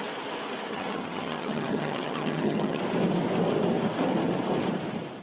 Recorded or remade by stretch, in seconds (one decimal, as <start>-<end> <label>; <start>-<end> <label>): 0.0-0.7 recorded; 0.7-2.8 remade; 2.8-5.2 recorded